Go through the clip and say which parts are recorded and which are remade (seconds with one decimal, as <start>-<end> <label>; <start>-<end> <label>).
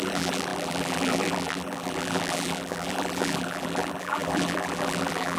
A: 0.0-5.4 remade